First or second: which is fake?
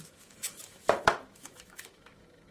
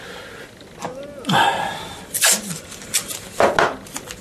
first